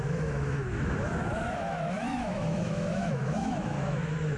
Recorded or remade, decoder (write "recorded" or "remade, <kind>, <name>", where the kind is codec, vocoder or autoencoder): remade, autoencoder, DAC-VAE